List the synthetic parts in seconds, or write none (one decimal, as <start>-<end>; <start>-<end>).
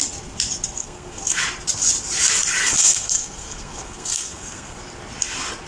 0.8-1.4; 2.6-4.8